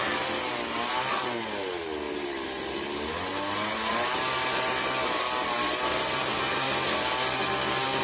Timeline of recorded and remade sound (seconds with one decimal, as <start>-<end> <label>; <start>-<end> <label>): 0.0-3.7 recorded; 3.7-4.3 remade; 4.3-5.9 recorded; 5.9-6.4 remade; 6.4-8.0 recorded